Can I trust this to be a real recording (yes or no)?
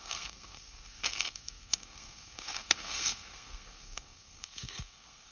no